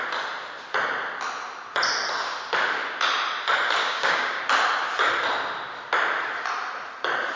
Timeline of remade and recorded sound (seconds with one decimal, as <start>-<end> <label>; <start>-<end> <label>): 0.0-3.8 recorded; 3.8-4.4 remade; 4.4-7.4 recorded